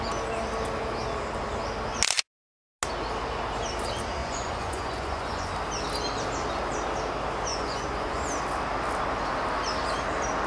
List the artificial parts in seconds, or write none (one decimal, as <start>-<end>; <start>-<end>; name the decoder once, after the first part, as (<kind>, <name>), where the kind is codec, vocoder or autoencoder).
4.2-5.5 (vocoder, Vocos); 7.5-8.2